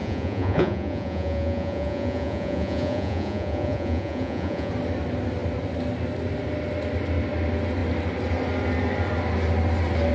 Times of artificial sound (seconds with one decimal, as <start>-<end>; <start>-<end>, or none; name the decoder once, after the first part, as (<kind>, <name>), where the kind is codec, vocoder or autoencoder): 0.0-4.7 (vocoder, Vocos)